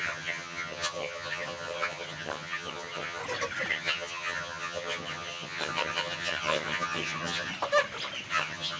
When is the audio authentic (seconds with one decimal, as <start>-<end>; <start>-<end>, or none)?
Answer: 3.2-3.7; 7.5-8.3